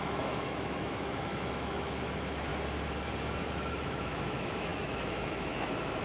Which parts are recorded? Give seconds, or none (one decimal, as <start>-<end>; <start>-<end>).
2.5-3.4